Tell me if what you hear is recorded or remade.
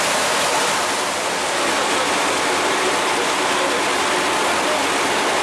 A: recorded